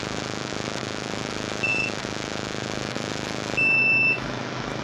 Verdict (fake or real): fake